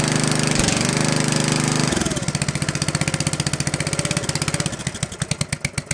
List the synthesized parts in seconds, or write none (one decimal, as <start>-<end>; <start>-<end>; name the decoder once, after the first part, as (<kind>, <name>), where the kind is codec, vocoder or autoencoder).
none